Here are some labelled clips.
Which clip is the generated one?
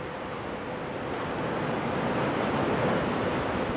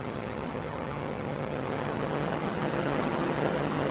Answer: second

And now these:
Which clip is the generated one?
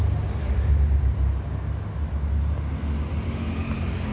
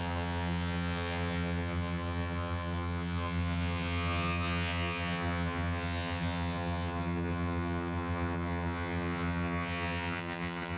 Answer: second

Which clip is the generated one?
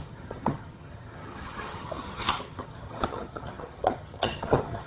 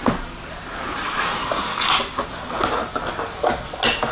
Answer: first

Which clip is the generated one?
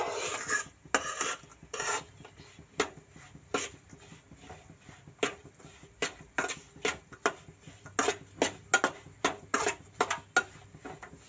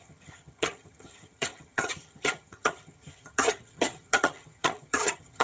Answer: second